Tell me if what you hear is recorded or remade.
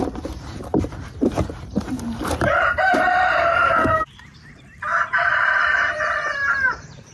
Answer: remade